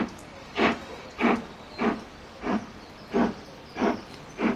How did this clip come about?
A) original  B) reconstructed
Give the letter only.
A